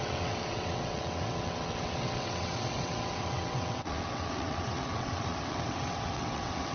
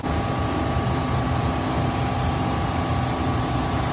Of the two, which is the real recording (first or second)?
second